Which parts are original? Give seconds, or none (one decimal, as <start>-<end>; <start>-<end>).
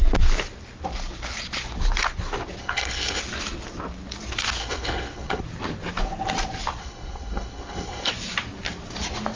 0.0-2.6; 3.2-4.6; 5.4-6.8; 8.1-9.4